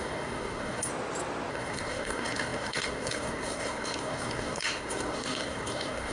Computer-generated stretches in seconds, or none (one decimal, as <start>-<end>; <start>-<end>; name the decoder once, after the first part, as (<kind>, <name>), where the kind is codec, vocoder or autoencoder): 0.0-0.9 (codec, SNAC); 1.5-6.1